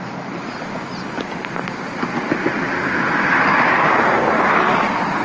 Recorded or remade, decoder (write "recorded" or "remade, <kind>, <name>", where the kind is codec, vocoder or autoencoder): recorded